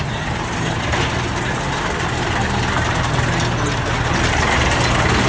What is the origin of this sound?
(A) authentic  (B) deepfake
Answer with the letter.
A